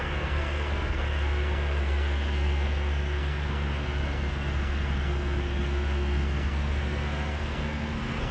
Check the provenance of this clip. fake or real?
fake